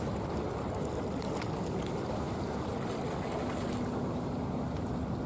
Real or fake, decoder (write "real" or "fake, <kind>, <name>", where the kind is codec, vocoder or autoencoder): real